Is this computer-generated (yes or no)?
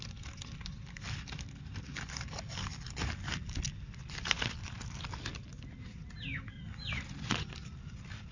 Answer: no